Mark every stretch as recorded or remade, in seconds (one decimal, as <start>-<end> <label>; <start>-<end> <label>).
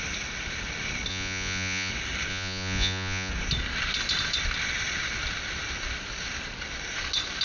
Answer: 0.0-1.1 recorded; 1.1-1.9 remade; 1.9-2.3 recorded; 2.3-3.3 remade; 3.3-7.4 recorded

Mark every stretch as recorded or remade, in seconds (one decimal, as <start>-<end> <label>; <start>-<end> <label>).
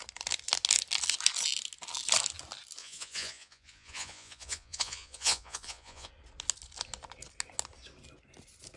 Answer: 0.0-2.8 recorded; 2.8-6.1 remade; 6.1-8.8 recorded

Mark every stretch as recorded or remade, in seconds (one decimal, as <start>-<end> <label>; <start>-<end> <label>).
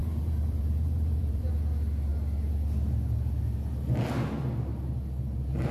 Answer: 0.0-1.5 remade; 1.5-5.7 recorded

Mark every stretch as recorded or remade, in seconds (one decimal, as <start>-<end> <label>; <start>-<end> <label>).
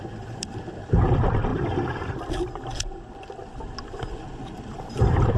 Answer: 0.0-5.4 recorded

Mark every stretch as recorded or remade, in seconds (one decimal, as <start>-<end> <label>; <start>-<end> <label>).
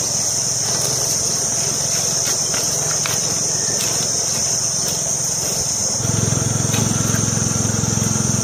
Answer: 0.0-8.4 recorded